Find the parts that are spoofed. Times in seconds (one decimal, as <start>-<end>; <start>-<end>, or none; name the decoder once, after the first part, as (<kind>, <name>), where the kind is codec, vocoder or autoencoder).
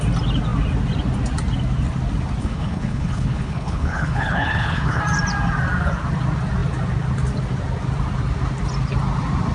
2.4-5.0 (codec, HILCodec)